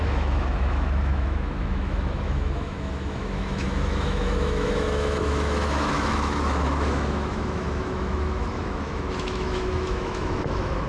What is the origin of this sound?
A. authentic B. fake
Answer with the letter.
B